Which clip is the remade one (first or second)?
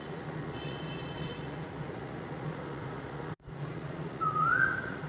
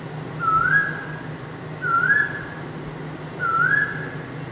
first